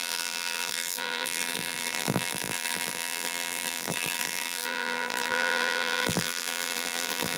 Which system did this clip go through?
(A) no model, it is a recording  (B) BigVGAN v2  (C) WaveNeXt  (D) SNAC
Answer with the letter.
B